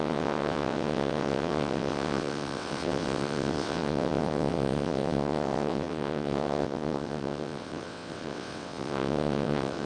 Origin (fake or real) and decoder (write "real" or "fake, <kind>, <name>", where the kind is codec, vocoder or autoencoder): fake, vocoder, WaveNeXt